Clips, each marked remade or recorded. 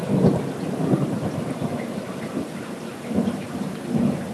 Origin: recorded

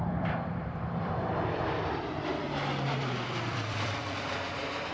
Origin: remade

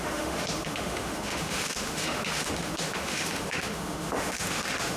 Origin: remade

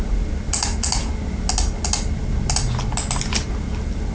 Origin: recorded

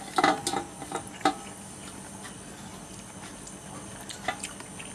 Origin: recorded